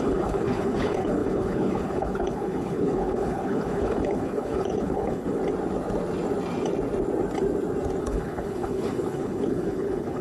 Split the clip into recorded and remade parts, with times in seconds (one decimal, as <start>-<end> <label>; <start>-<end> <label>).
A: 0.0-5.4 remade; 5.4-8.0 recorded; 8.0-10.2 remade